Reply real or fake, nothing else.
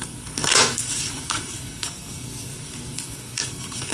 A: fake